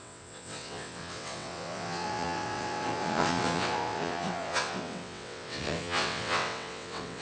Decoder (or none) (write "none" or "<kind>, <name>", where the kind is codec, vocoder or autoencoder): vocoder, WaveNeXt